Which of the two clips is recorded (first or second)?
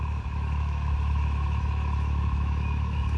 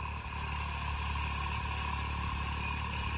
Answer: second